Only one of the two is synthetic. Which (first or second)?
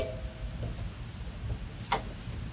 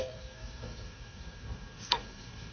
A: second